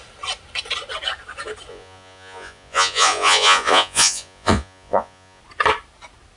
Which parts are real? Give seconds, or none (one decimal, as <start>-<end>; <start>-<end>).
0.0-1.7; 5.4-6.4

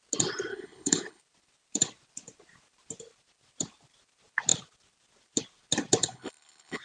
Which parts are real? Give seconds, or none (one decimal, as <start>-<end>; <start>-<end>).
0.0-0.5; 1.2-6.0